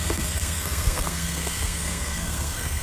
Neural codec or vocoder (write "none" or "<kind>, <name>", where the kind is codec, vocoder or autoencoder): codec, SNAC